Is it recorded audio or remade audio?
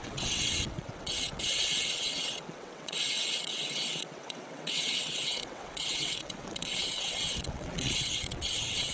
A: remade